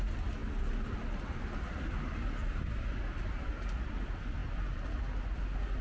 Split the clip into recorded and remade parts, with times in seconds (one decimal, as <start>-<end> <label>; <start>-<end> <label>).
0.0-5.8 recorded